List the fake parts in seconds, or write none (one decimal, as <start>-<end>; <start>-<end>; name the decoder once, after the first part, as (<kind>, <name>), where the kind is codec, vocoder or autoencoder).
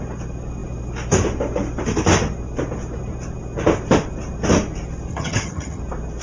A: 5.1-5.8 (vocoder, HiFi-GAN)